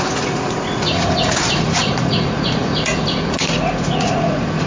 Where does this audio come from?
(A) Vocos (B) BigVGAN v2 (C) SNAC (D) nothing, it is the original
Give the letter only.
A